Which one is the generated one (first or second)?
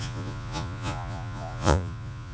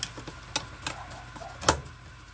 first